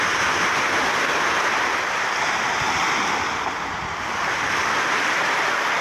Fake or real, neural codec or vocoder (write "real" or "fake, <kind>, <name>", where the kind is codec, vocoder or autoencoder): real